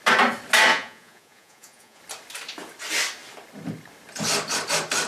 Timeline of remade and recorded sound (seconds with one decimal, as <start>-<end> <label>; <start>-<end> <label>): 0.0-0.7 recorded; 0.7-2.0 remade; 2.0-5.1 recorded